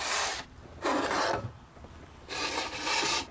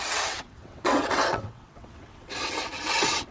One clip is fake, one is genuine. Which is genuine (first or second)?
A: first